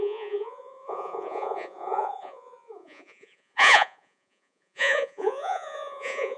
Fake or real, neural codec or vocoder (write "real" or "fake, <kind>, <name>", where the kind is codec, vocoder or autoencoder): fake, vocoder, Vocos